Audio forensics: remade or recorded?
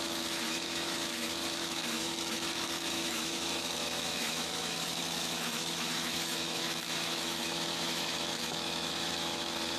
remade